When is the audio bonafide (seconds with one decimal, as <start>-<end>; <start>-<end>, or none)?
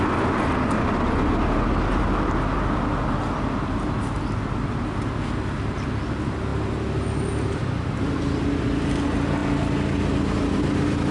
0.0-11.1